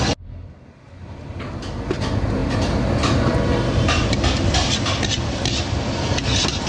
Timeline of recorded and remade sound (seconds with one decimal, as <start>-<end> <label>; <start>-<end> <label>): 0.0-6.7 recorded